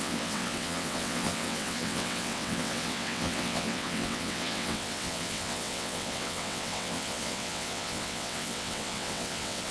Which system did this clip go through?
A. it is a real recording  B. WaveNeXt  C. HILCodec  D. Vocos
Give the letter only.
B